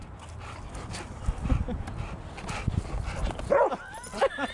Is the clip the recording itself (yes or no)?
yes